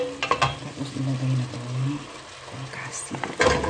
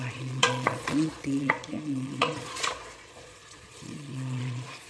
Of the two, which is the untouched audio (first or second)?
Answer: first